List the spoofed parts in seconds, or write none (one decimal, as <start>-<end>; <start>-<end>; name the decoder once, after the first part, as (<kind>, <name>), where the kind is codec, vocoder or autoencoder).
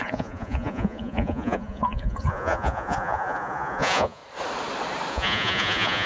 0.0-4.2 (vocoder, Vocos); 5.1-6.1